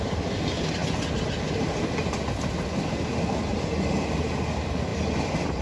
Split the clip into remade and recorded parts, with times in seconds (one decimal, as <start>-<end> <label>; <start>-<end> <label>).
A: 0.0-5.6 recorded